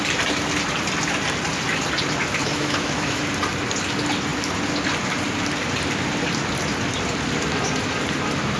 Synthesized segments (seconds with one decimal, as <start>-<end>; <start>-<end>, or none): 2.4-3.2